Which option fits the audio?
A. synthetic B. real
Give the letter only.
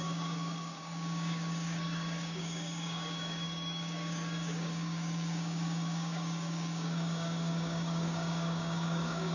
A